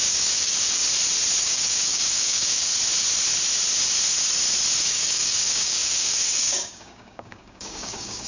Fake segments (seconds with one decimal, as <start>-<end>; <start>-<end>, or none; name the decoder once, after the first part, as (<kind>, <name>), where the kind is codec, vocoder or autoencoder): 0.0-0.8 (codec, DAC); 1.4-2.7; 4.9-8.3